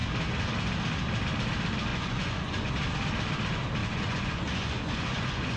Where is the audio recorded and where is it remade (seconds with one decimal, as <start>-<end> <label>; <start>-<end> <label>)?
0.0-1.9 recorded; 1.9-2.7 remade; 2.7-3.8 recorded; 3.8-5.6 remade